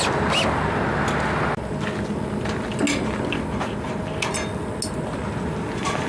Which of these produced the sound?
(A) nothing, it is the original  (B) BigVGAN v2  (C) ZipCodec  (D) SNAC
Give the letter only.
A